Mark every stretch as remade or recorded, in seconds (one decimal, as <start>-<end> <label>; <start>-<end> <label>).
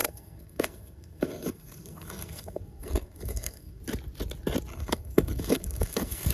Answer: 0.0-3.8 remade; 3.8-4.7 recorded; 4.7-6.3 remade